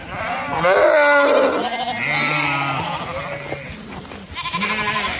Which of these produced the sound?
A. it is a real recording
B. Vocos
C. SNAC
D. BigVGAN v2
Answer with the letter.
A